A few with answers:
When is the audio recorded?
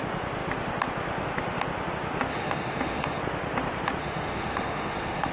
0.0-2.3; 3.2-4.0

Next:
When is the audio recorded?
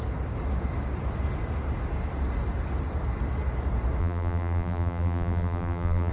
0.0-4.0